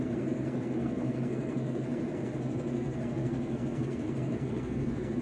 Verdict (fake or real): fake